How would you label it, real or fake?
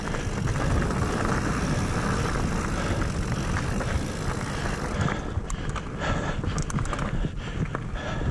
real